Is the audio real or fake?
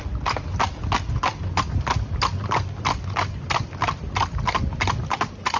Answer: real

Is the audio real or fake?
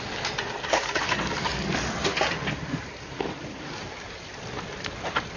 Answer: real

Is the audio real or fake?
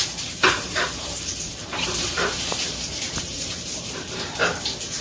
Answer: fake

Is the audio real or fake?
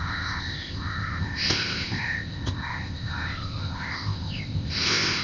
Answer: fake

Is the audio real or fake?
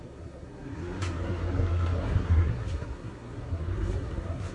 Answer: fake